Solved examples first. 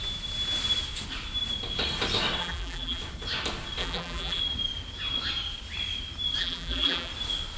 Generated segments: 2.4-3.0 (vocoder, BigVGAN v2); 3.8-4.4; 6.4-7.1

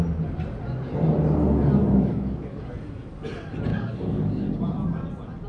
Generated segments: 1.8-2.6 (codec, DAC); 3.7-4.5

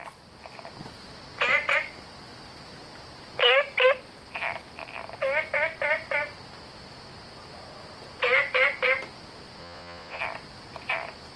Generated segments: 9.6-10.2 (vocoder, Vocos)

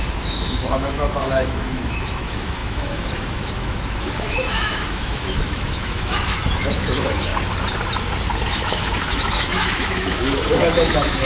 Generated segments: 0.0-7.3 (autoencoder, DAC-VAE); 8.5-11.3